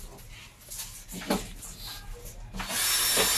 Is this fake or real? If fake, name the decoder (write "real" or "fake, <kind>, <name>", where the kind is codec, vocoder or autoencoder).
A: real